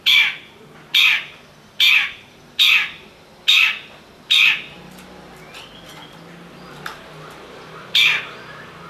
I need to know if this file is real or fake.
fake